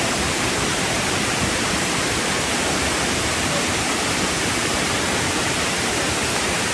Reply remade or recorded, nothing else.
recorded